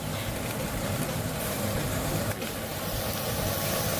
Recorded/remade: remade